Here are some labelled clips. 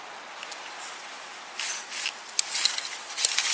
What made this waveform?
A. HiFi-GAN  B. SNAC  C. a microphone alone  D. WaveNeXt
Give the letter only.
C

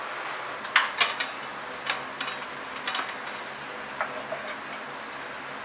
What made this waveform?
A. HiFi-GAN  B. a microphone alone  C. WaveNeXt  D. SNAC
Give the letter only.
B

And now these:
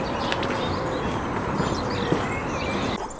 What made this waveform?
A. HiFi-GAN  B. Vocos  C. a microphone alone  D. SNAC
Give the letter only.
C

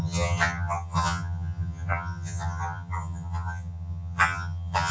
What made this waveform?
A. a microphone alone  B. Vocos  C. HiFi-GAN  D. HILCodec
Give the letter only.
C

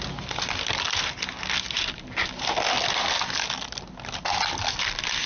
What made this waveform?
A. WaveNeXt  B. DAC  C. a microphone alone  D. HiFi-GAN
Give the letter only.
C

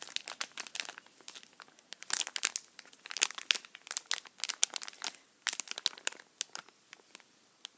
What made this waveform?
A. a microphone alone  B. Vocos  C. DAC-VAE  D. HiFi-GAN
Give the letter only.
A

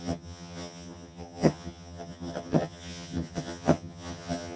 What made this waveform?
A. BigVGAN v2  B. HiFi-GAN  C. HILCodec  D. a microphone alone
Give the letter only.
B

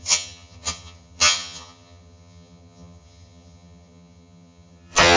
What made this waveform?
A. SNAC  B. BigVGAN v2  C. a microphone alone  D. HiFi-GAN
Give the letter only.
D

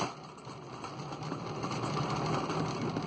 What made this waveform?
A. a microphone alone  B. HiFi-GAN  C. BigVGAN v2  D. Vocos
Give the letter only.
A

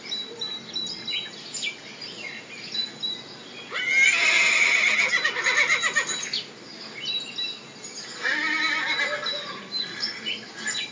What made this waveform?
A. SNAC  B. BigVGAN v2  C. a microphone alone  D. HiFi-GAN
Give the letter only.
C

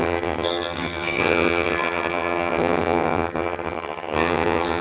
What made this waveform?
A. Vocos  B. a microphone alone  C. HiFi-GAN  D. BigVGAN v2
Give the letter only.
C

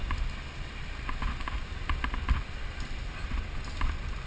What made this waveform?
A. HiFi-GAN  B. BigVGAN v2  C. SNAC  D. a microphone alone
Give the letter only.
D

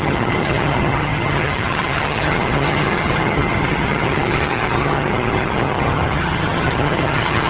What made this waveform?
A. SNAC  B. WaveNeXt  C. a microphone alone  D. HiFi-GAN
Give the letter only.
D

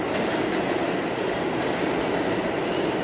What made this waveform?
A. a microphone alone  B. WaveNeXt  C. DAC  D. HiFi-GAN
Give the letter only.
A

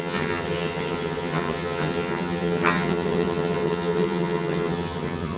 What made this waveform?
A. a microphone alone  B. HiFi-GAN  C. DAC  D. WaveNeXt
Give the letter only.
B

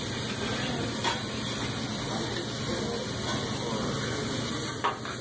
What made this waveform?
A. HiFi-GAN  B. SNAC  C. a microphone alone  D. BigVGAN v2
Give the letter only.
C